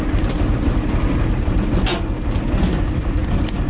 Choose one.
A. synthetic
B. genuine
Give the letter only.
B